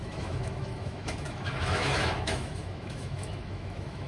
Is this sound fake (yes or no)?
yes